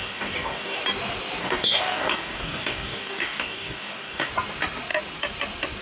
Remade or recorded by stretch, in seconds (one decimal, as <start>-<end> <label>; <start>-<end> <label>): 0.0-0.8 remade; 0.8-1.4 recorded; 1.4-4.3 remade; 4.3-5.8 recorded